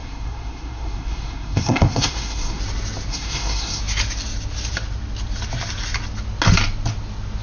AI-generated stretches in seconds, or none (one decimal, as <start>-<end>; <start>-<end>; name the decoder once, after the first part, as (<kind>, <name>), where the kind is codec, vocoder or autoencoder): 0.0-2.6 (codec, SNAC); 3.1-3.8